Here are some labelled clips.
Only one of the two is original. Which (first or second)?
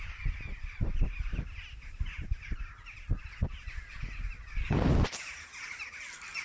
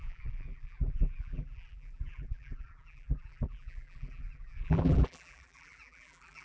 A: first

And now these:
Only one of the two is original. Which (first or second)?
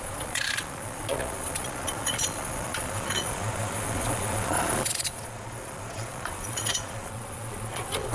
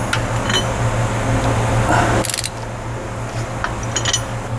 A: second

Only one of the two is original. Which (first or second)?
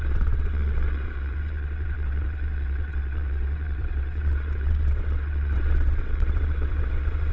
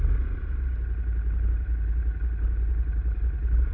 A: second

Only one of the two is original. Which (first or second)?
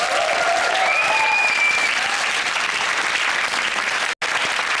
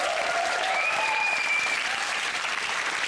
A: first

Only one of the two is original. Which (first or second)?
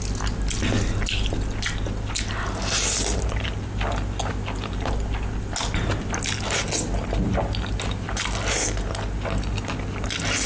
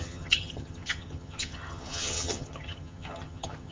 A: first